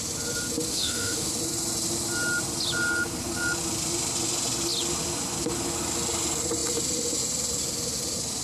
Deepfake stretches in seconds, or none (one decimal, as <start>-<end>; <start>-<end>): 0.7-1.3